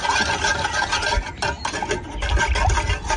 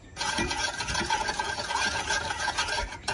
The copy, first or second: second